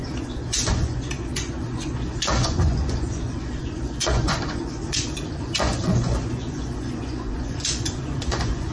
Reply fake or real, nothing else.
fake